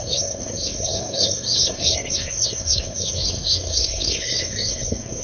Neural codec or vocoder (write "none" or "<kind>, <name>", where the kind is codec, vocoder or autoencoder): codec, SNAC